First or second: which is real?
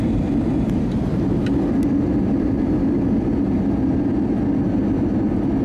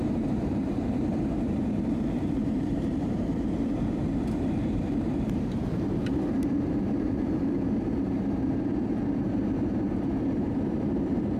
first